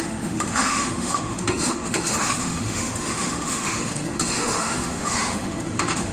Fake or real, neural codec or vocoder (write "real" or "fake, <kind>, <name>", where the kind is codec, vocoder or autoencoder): fake, autoencoder, DAC-VAE